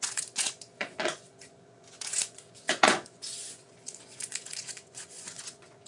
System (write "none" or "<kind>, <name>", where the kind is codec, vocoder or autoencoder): vocoder, Vocos